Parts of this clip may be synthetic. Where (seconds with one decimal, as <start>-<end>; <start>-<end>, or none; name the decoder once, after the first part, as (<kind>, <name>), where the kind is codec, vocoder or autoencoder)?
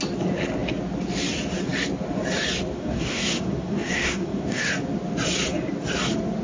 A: 2.8-4.7 (codec, SNAC)